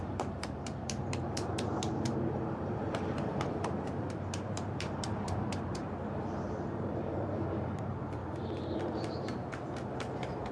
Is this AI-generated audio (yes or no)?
yes